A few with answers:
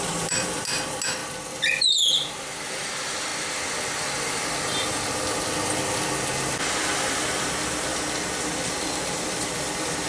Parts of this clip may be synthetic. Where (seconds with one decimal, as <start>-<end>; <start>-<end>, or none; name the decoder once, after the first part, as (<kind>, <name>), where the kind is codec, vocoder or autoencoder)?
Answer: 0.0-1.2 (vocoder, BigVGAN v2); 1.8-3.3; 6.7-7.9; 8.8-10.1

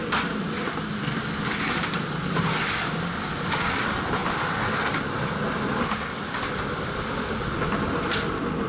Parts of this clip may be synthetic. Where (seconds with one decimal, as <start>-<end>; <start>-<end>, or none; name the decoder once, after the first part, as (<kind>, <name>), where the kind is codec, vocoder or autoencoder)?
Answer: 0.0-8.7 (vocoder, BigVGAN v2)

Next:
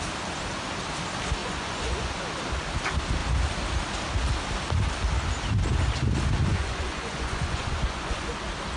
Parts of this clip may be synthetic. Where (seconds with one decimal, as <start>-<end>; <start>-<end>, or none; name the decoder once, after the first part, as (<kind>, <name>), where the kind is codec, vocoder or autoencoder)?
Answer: 1.4-2.1 (vocoder, Vocos); 6.5-8.3

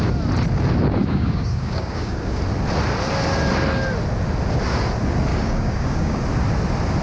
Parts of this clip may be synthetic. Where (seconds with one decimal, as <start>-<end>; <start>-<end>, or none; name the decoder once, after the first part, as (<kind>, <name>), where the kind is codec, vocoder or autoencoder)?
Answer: 1.0-2.4 (codec, DAC); 5.3-6.2

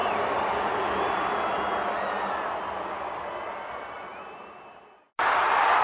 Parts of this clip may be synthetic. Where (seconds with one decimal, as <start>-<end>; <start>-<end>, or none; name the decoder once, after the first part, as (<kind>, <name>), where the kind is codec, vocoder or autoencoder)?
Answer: none

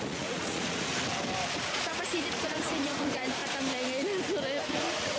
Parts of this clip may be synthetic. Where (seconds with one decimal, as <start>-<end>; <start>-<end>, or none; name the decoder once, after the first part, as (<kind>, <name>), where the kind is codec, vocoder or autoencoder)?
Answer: 0.0-0.9 (vocoder, Vocos); 1.6-3.4; 4.7-5.2

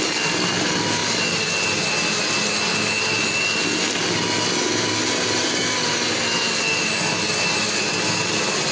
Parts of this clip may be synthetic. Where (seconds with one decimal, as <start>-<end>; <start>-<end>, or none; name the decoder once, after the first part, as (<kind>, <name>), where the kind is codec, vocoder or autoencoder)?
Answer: none

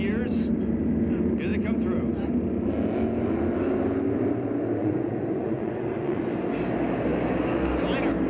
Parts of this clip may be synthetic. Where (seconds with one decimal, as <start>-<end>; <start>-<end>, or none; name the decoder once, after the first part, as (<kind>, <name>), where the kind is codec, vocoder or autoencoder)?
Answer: 4.8-6.2 (vocoder, Vocos)